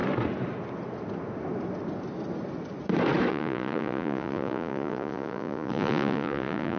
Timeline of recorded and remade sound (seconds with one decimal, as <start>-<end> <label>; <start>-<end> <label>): 0.0-3.3 recorded; 3.3-6.8 remade